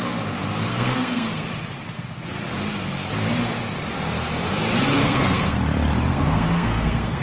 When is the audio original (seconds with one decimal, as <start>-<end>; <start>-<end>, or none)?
0.0-0.7; 1.5-5.0; 5.6-6.1